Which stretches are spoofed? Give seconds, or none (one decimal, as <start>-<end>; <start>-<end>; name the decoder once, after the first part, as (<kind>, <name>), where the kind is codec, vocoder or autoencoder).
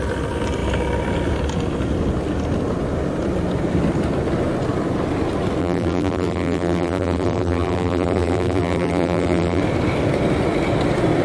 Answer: 5.6-9.6 (vocoder, BigVGAN v2)